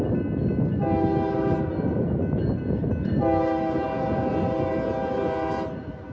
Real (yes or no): yes